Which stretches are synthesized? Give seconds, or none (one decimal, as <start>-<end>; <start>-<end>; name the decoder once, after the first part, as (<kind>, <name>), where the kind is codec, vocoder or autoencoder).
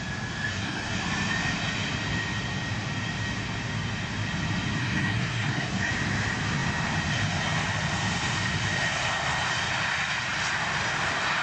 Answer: 0.5-1.0 (codec, SNAC); 4.8-5.9